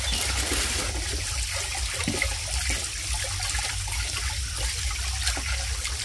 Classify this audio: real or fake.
real